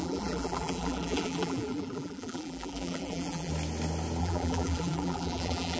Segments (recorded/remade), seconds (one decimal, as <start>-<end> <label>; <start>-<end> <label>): 0.0-3.5 remade; 3.5-4.2 recorded; 4.2-5.8 remade